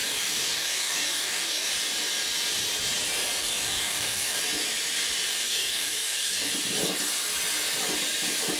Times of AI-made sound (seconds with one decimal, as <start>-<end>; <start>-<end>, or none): 0.0-1.7; 3.4-4.4; 5.3-6.5